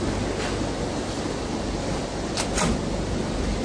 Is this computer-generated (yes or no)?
no